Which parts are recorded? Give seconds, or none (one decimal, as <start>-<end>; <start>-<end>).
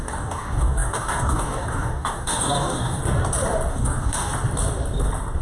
3.0-3.7; 4.3-5.4